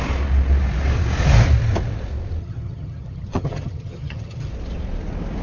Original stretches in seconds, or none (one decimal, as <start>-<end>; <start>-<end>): 0.0-2.4; 4.5-5.4